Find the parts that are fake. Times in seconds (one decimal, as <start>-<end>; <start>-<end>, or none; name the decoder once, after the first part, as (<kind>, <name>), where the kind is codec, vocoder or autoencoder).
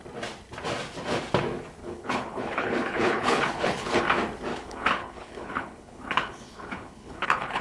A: 1.8-4.0 (codec, HILCodec); 4.5-7.6